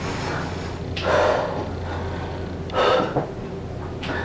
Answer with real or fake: real